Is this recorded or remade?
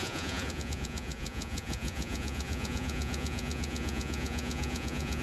remade